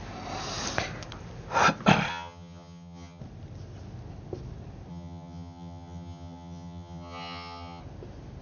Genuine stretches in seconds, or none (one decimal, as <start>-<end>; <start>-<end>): 0.0-2.1; 3.2-4.9; 7.8-8.4